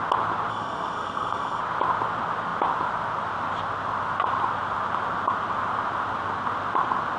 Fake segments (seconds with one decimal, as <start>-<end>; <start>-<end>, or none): 0.5-1.6